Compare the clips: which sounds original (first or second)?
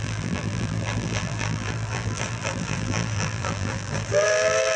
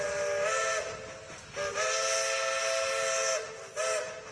second